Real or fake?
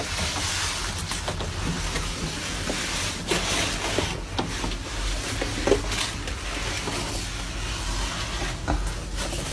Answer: real